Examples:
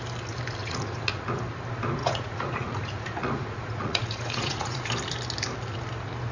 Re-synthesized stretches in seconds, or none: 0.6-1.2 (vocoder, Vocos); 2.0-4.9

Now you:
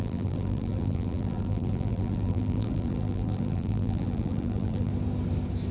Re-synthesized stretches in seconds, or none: 0.0-4.9 (vocoder, BigVGAN v2)

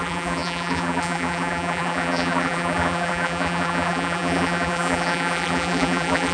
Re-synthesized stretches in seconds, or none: 0.0-6.3 (vocoder, BigVGAN v2)

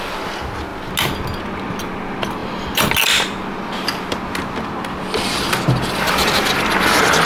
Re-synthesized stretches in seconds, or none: none